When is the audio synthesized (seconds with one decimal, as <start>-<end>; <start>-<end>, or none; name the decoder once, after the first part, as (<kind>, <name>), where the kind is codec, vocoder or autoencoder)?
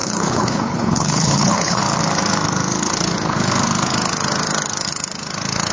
0.0-1.8 (codec, HILCodec)